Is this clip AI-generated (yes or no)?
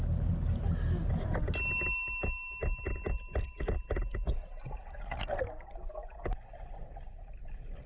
no